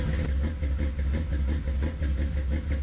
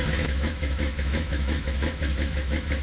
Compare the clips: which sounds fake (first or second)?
second